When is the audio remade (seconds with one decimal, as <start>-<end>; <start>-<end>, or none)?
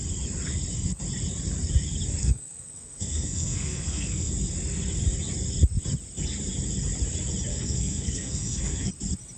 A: 2.2-4.3; 7.5-8.9